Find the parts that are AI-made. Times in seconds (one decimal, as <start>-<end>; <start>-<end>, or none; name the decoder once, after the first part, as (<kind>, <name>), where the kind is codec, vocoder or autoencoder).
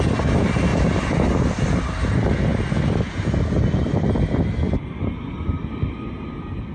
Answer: none